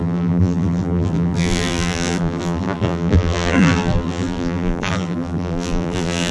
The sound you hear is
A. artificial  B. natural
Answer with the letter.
A